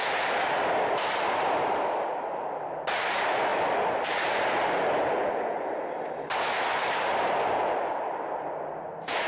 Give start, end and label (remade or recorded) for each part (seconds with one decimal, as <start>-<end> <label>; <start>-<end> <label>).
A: 0.0-9.3 recorded